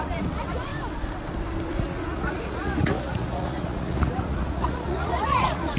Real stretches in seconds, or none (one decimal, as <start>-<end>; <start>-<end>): 0.7-1.7